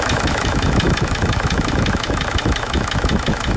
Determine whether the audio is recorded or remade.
remade